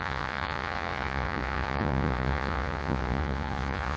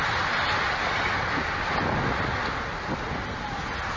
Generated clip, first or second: first